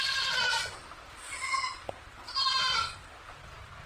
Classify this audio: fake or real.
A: real